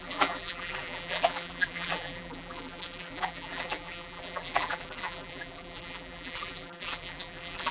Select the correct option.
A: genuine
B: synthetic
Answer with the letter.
B